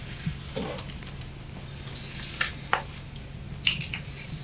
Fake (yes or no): no